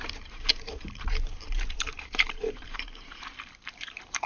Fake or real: fake